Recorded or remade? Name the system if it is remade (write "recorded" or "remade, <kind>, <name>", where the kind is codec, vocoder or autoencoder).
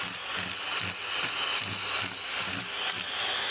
recorded